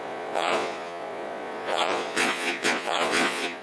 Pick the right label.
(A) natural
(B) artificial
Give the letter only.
B